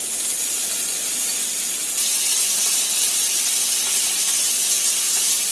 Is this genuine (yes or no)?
no